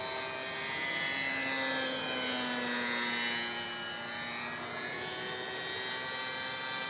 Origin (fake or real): real